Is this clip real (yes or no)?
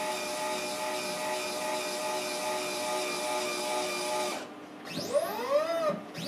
yes